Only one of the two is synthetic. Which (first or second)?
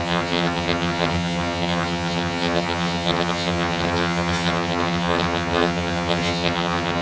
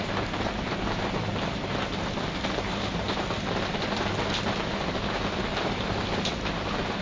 first